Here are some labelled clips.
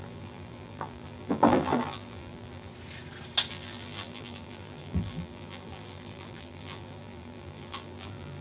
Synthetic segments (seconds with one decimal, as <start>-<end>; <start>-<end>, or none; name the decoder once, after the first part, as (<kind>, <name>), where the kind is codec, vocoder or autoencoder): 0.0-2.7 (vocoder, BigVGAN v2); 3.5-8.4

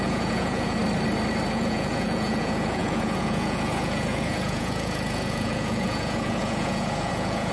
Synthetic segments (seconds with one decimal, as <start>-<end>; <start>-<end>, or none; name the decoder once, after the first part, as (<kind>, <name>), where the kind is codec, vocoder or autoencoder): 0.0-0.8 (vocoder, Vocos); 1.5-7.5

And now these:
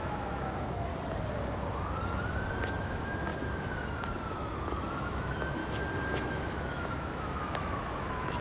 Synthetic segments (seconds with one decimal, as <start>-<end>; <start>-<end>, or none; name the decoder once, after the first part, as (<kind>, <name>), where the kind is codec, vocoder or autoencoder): 0.0-0.9 (autoencoder, DAC-VAE); 2.8-3.3; 4.3-5.6; 6.2-8.4

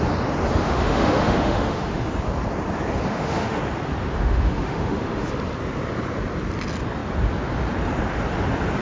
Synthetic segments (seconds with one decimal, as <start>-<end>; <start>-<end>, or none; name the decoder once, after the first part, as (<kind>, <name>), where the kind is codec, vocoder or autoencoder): 0.6-2.1 (autoencoder, DAC-VAE); 3.1-3.6; 4.0-5.3